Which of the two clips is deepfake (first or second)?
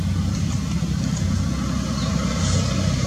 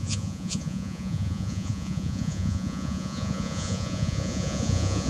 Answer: second